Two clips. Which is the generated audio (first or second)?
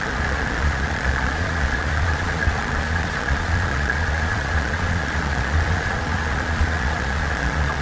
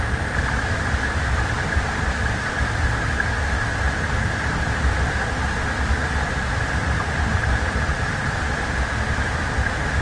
first